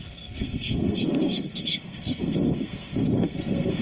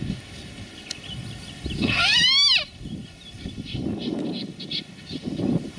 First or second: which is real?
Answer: second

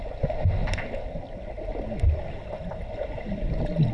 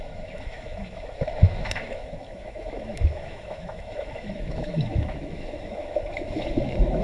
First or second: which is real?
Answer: first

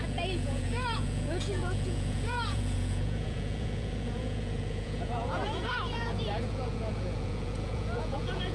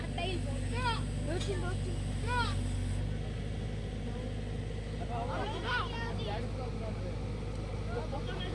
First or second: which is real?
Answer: second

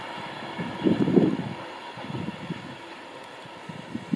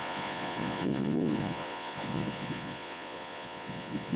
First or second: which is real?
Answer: first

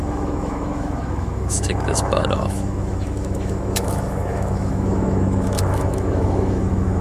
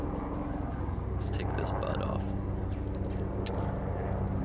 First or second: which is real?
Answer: second